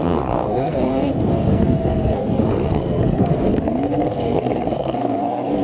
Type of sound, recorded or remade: remade